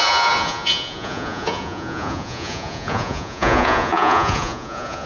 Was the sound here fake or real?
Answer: fake